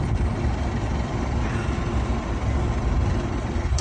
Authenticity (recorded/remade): recorded